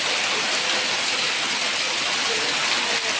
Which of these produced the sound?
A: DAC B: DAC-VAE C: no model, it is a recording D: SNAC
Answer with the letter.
C